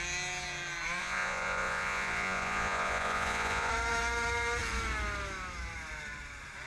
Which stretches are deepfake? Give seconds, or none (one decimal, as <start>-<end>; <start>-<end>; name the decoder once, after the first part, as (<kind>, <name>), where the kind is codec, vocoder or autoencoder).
1.0-3.7 (vocoder, Vocos)